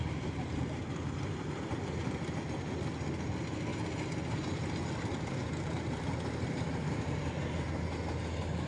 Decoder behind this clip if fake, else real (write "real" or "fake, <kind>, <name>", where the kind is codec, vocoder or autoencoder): real